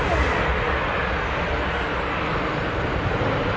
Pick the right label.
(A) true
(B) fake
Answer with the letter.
A